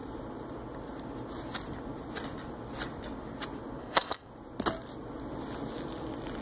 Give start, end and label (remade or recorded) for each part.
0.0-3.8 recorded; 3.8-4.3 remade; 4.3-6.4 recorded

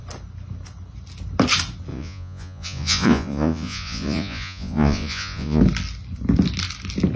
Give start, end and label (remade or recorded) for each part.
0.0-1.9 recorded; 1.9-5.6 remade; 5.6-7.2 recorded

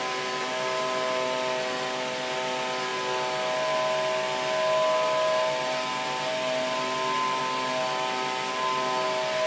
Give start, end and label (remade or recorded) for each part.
0.0-9.5 recorded